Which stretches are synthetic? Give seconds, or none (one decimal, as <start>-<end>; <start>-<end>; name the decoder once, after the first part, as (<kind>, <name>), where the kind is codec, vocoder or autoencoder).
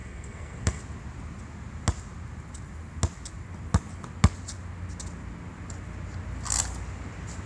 0.0-0.8 (codec, SNAC)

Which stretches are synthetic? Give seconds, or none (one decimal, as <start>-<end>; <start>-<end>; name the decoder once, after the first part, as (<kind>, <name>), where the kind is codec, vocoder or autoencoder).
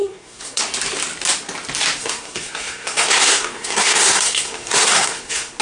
0.0-0.6 (codec, SNAC); 2.0-5.6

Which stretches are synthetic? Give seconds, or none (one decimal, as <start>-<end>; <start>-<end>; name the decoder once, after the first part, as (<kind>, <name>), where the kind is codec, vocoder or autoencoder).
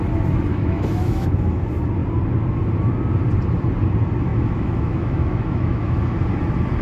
0.5-1.6 (autoencoder, DAC-VAE); 4.3-6.0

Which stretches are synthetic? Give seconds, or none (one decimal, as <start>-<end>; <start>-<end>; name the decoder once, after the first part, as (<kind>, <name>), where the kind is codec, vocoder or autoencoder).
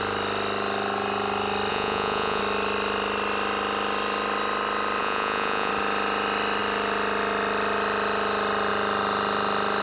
1.7-2.4 (vocoder, Vocos); 5.0-5.7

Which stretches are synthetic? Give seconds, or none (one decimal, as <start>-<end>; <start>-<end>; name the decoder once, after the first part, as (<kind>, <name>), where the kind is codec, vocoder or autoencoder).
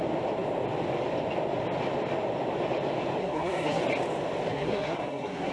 3.2-3.8 (codec, SNAC); 4.5-5.5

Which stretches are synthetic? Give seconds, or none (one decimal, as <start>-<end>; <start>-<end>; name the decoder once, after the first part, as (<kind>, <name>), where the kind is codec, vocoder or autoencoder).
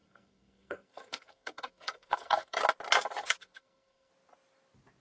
0.0-2.6 (codec, SNAC); 3.2-4.1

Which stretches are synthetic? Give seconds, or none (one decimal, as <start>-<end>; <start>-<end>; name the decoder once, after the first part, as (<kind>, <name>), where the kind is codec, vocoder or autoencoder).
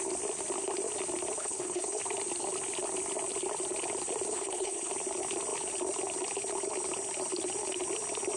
1.4-2.0 (codec, HILCodec); 4.3-4.9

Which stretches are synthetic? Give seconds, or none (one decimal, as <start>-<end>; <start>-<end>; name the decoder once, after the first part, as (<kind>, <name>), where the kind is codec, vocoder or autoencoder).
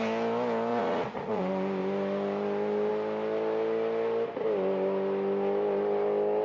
0.7-1.4 (vocoder, Vocos)